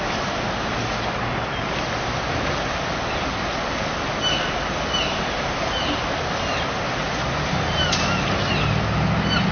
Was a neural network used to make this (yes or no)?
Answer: no